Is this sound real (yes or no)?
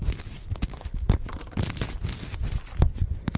yes